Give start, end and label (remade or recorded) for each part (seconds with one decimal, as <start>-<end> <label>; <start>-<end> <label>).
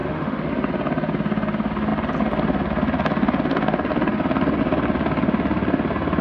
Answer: 0.0-0.5 remade; 0.5-6.2 recorded